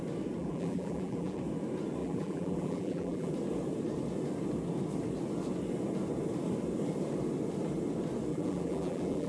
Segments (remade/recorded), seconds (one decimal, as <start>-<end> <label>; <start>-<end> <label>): 0.0-0.4 recorded; 0.4-1.4 remade; 1.4-2.0 recorded; 2.0-3.3 remade; 3.3-8.3 recorded; 8.3-9.3 remade